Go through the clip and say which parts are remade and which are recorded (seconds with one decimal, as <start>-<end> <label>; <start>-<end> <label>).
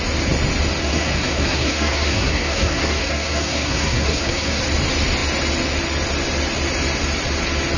0.0-0.8 recorded; 0.8-4.6 remade; 4.6-7.8 recorded